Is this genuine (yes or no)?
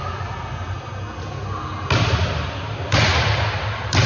yes